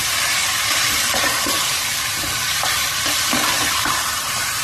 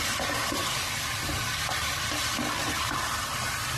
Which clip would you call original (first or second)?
second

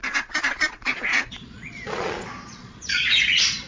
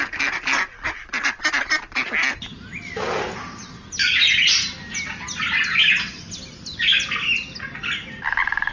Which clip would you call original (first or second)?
second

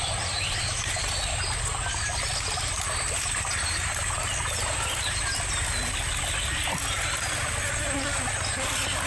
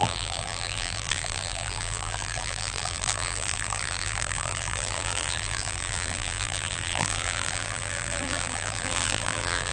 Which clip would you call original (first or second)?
first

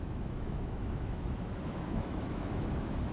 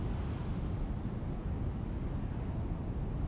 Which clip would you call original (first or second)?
second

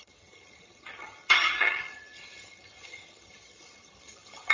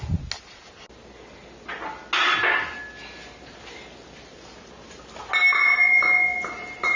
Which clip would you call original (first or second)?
second